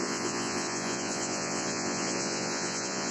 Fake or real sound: fake